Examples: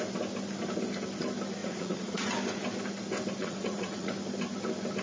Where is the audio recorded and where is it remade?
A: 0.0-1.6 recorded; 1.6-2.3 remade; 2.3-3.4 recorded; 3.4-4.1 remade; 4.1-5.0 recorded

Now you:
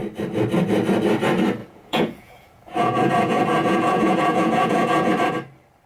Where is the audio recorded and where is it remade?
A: 0.0-1.6 recorded; 1.6-5.1 remade; 5.1-5.9 recorded

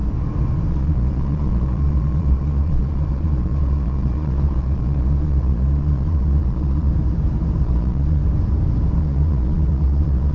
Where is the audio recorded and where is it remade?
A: 0.0-0.7 recorded; 0.7-6.9 remade; 6.9-7.6 recorded; 7.6-8.2 remade; 8.2-9.0 recorded; 9.0-10.3 remade

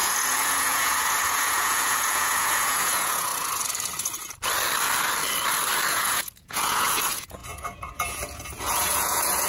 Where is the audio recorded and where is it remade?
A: 0.0-3.3 remade; 3.3-5.9 recorded; 5.9-9.5 remade

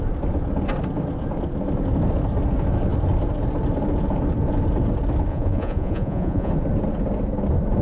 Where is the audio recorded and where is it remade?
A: 0.0-5.3 recorded; 5.3-6.5 remade; 6.5-7.8 recorded

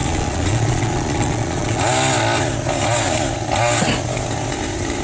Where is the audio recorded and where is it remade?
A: 0.0-1.8 remade; 1.8-5.0 recorded

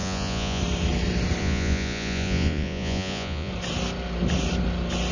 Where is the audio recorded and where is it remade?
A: 0.0-0.6 remade; 0.6-1.4 recorded; 1.4-3.5 remade; 3.5-5.1 recorded

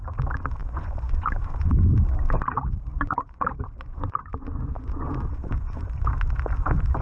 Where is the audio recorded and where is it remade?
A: 0.0-0.6 recorded; 0.6-1.8 remade; 1.8-2.9 recorded; 2.9-6.1 remade; 6.1-7.0 recorded